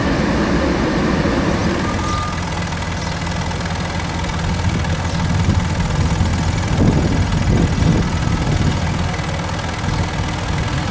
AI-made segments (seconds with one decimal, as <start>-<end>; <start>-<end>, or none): none